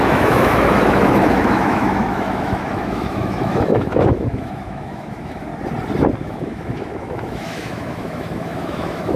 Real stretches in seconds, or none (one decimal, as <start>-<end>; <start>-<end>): 5.5-6.2